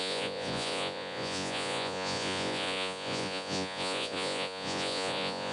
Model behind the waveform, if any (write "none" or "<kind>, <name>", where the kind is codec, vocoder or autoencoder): vocoder, Vocos